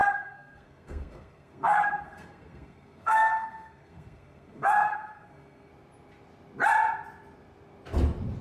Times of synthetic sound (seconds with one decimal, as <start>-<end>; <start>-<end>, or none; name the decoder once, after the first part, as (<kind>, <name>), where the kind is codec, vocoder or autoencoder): 0.0-5.7 (codec, SNAC)